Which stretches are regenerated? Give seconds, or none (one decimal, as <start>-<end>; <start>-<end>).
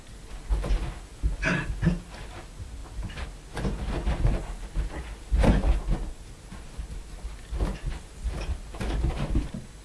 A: none